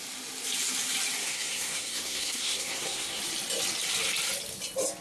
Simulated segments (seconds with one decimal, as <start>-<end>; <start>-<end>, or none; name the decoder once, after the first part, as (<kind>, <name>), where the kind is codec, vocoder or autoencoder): 1.2-3.2 (codec, SNAC)

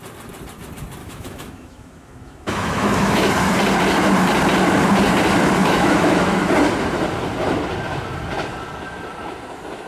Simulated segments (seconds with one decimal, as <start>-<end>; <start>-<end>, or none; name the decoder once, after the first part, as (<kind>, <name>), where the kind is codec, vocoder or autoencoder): 1.0-3.3 (autoencoder, DAC-VAE); 5.6-6.5

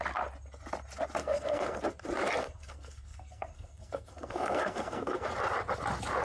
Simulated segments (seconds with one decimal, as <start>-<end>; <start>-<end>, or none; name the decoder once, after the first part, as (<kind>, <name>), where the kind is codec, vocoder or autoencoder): 1.2-1.8 (codec, SNAC); 2.4-5.3

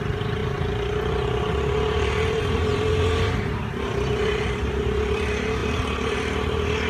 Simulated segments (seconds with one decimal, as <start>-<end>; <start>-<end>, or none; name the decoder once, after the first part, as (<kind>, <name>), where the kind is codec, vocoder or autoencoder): 0.0-6.9 (vocoder, BigVGAN v2)